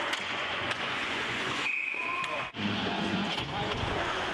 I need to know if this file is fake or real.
fake